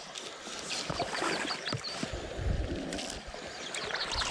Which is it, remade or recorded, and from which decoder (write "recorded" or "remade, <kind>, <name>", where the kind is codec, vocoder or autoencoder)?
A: recorded